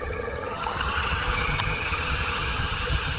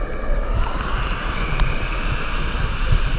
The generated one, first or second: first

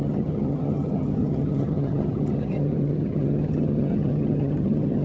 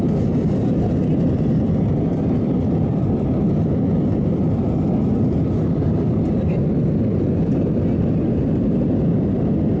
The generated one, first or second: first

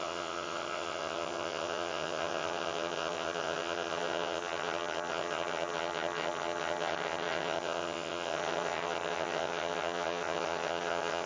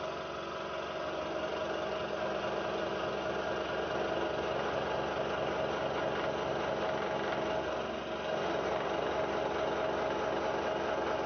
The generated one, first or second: first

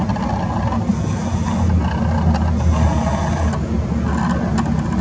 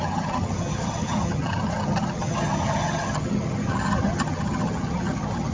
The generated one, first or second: second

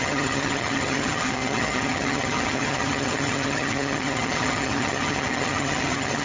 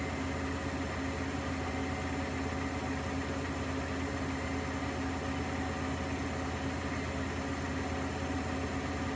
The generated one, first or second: first